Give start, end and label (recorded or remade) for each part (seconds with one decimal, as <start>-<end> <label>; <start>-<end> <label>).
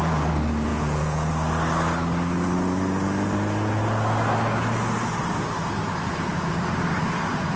0.0-0.7 recorded; 0.7-1.3 remade; 1.3-7.6 recorded